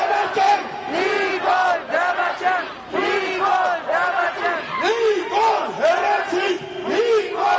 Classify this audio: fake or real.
real